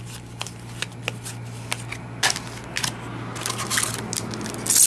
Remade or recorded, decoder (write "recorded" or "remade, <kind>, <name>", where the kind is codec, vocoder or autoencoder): recorded